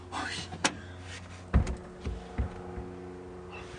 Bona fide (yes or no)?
yes